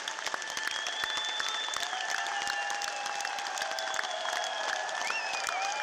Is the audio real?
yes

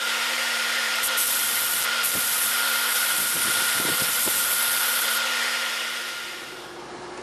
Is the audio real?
no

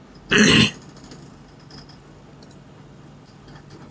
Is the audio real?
yes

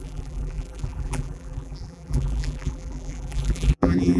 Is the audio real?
no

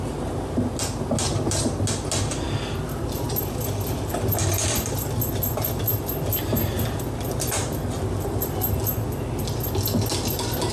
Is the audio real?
yes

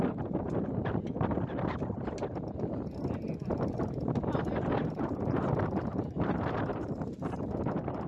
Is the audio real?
yes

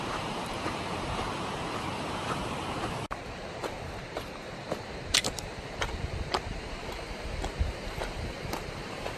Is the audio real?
no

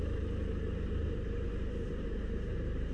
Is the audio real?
no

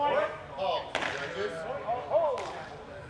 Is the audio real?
yes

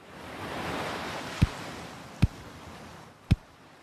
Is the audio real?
no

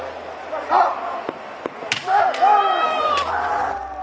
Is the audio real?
yes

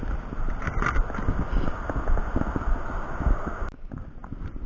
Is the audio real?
yes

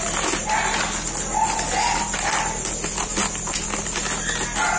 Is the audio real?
yes